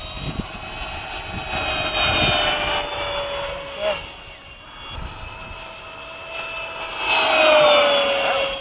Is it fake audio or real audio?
real